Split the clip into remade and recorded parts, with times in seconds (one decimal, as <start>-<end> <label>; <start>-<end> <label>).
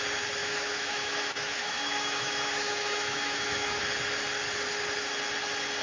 0.0-0.4 recorded; 0.4-3.8 remade; 3.8-5.8 recorded